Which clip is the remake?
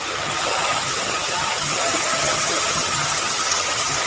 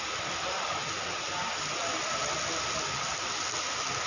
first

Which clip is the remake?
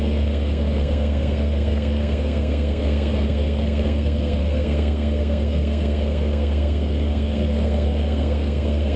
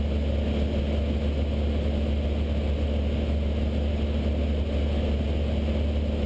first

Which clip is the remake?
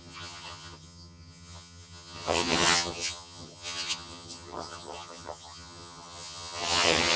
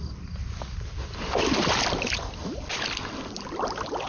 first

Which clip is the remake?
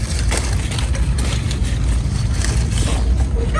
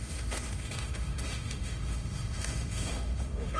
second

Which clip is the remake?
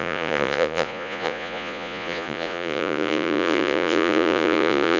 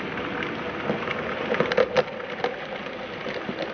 first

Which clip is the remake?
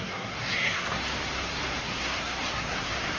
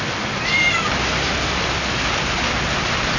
first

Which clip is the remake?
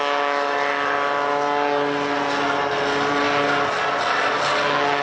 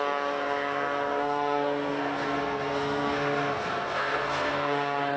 second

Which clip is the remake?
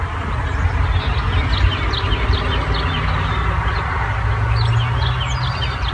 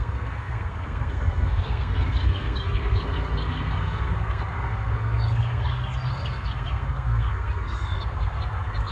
second